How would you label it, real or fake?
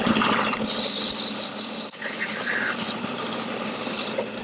real